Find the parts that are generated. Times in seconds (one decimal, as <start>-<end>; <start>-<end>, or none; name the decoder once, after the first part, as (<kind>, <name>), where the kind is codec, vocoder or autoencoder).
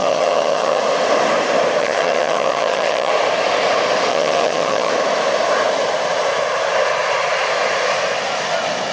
0.0-0.8 (vocoder, HiFi-GAN); 1.8-3.1; 4.1-4.9